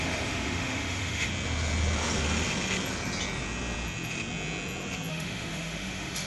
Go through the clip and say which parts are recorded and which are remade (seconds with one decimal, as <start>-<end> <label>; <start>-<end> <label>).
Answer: 0.0-1.3 remade; 1.3-5.1 recorded; 5.1-6.3 remade